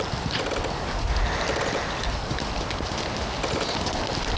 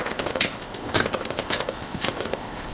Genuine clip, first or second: first